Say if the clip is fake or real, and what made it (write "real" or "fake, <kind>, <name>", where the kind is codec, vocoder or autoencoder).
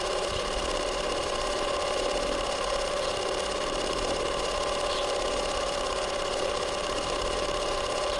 fake, vocoder, BigVGAN v2